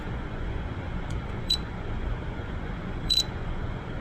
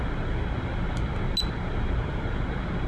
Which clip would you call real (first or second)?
second